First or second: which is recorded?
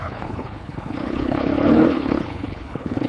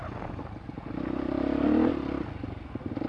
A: second